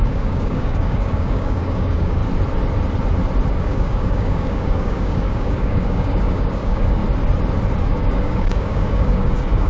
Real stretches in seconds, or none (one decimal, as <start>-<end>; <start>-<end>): 2.2-3.5; 7.0-7.8